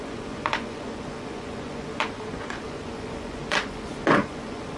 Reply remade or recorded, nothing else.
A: remade